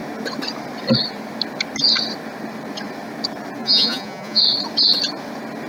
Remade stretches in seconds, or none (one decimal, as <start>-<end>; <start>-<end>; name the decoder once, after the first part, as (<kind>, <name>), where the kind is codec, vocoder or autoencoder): 3.6-4.4 (vocoder, Vocos)